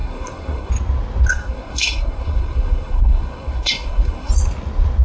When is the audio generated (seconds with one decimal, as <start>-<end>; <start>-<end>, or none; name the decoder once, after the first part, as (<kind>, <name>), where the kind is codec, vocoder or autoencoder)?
0.0-0.7 (codec, SNAC); 1.3-4.3